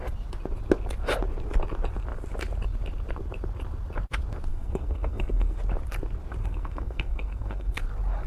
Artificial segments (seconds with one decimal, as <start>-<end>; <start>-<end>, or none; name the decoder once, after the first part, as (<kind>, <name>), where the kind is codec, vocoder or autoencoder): 4.5-5.6 (codec, SNAC); 6.4-7.8